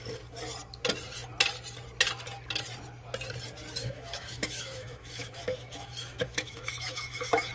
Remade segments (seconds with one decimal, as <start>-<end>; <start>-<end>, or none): 3.8-7.5